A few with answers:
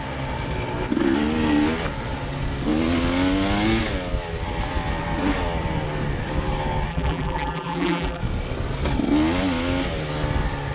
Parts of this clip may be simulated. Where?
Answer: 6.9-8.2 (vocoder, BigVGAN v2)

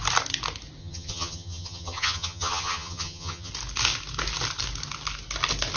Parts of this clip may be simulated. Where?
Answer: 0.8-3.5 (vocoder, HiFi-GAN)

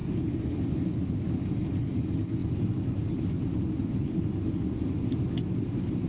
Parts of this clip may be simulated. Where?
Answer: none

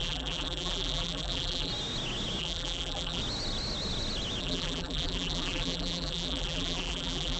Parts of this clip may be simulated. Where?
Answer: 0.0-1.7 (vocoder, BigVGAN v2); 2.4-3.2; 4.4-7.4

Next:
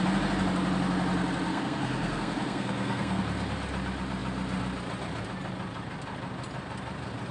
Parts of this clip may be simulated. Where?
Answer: 1.5-3.2 (codec, SNAC)